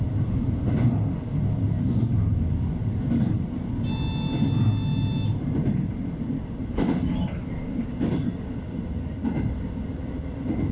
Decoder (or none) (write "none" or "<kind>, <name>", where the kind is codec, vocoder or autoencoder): none